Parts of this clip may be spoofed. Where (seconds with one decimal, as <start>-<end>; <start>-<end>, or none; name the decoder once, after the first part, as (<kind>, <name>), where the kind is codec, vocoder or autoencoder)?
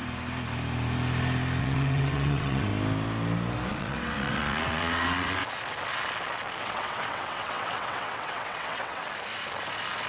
1.6-2.7 (vocoder, WaveNeXt); 3.7-5.4; 6.6-9.0